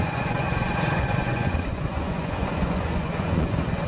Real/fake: fake